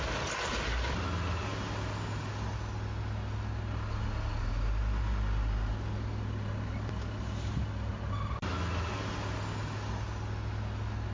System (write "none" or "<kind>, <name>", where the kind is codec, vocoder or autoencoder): none